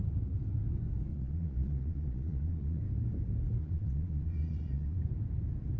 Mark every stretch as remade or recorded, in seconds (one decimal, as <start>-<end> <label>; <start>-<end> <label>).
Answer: 0.0-1.1 recorded; 1.1-2.8 remade; 2.8-3.6 recorded; 3.6-5.0 remade; 5.0-5.8 recorded